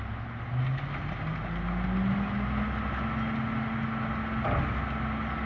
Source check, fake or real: real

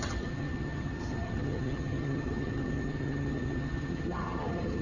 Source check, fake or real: fake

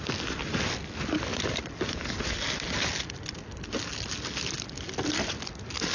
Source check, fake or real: real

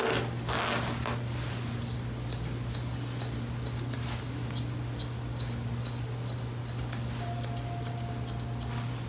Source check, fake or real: real